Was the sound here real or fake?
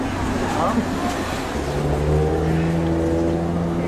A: real